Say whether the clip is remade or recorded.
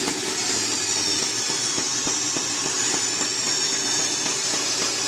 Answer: recorded